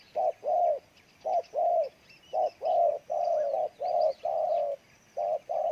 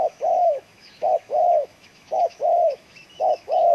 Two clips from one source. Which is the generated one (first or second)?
second